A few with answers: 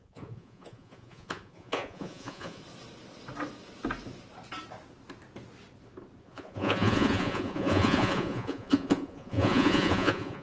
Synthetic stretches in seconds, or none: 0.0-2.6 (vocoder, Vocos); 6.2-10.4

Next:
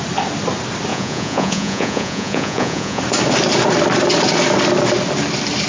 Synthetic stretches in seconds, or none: 0.9-3.0 (vocoder, Vocos)

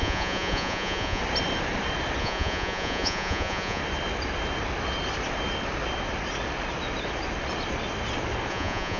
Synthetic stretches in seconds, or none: 0.0-1.2 (vocoder, Vocos); 2.2-3.8; 8.5-9.0

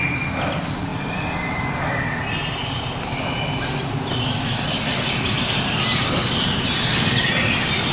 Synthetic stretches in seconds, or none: none

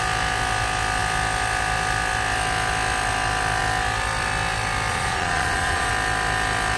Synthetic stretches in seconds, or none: 4.9-5.9 (vocoder, Vocos)

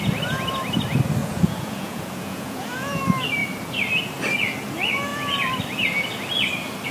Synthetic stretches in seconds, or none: 1.2-3.0 (vocoder, Vocos)